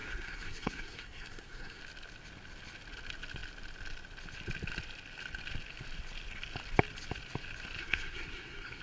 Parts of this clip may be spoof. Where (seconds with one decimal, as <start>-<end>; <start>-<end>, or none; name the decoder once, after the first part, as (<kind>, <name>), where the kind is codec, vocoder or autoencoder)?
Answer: 0.0-1.8 (codec, SNAC); 7.8-8.8